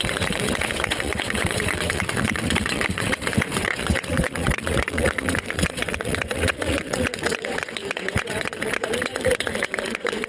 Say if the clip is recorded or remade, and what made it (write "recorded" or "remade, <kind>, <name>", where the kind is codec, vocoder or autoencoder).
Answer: remade, vocoder, WaveNeXt